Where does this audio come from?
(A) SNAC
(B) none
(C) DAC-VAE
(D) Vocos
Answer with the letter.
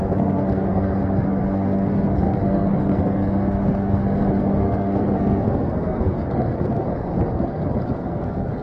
A